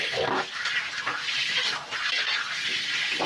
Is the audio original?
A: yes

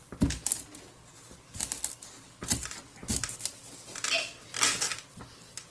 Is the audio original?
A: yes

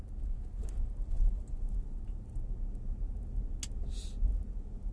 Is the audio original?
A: yes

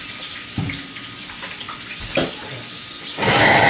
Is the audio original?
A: yes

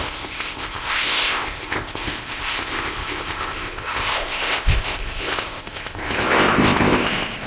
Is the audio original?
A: no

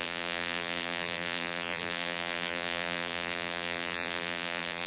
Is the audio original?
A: no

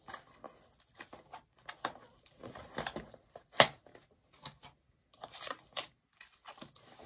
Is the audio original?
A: yes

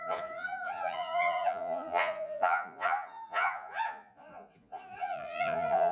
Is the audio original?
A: no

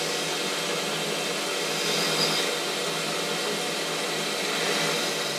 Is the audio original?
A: yes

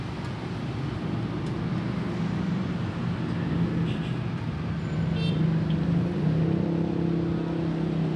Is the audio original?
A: yes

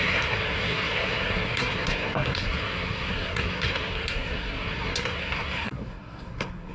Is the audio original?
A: no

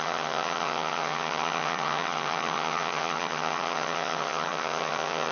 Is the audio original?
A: no